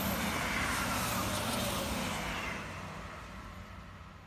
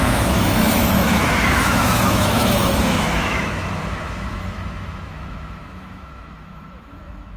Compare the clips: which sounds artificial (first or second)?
second